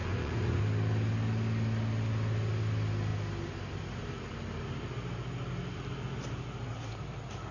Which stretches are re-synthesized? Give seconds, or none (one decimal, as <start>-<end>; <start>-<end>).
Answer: 0.0-0.6

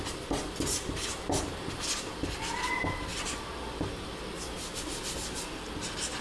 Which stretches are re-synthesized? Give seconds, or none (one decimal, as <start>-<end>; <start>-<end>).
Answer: none

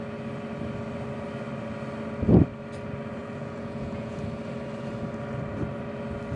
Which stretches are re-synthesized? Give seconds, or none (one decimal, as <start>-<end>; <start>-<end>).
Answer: 3.2-4.2

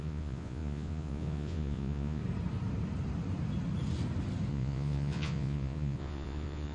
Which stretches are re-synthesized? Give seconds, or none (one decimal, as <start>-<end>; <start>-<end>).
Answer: 0.0-2.2; 4.5-6.7